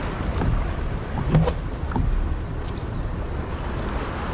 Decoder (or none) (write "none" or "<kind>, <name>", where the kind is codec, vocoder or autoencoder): none